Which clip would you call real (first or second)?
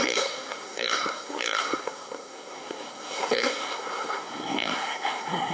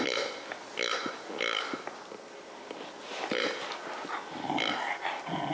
second